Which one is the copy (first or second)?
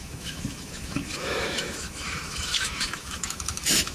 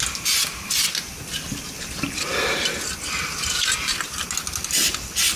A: first